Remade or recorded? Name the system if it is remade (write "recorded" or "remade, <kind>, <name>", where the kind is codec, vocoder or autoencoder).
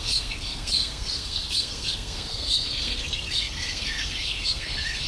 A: remade, codec, SNAC